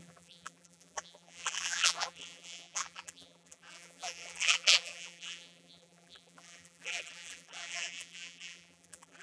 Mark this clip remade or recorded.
remade